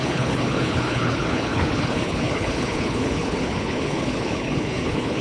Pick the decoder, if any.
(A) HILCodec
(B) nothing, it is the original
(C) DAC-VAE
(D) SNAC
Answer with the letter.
A